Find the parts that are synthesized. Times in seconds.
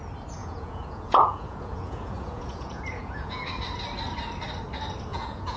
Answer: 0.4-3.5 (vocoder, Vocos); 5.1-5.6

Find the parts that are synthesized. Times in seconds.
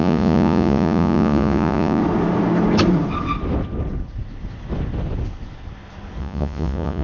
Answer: 0.0-2.0 (vocoder, Vocos); 6.2-7.0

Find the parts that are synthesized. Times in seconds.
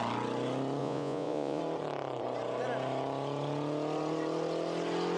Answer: 0.8-1.6 (vocoder, Vocos)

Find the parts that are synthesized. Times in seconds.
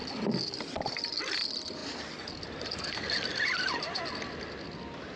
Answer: none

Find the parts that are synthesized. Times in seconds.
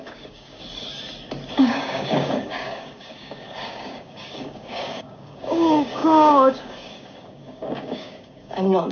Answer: 0.0-0.6 (codec, DAC); 1.6-8.9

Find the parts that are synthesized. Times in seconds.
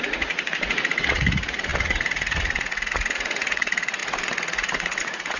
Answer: 0.0-5.4 (vocoder, Vocos)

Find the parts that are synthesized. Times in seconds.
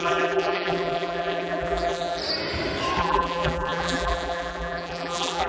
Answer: 0.0-2.2 (vocoder, BigVGAN v2); 3.0-5.5